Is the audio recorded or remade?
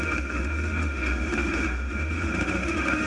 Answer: remade